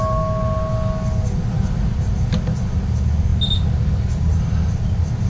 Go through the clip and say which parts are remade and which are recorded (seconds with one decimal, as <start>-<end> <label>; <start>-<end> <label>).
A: 0.0-5.3 recorded